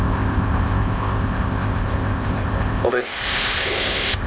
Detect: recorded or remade remade